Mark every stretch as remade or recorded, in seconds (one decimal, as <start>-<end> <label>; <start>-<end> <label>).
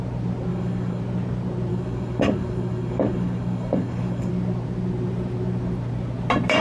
0.0-0.5 recorded; 0.5-1.0 remade; 1.0-1.7 recorded; 1.7-4.3 remade; 4.3-6.6 recorded